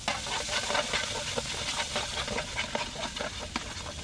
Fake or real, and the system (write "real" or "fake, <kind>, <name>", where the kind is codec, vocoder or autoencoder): real